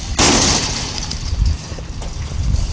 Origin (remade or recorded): recorded